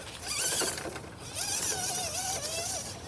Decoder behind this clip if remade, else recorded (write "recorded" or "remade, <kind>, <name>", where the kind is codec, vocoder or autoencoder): recorded